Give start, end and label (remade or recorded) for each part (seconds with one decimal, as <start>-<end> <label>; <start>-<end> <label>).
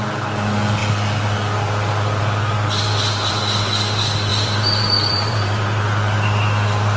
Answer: 0.0-4.3 recorded; 4.3-5.8 remade; 5.8-7.0 recorded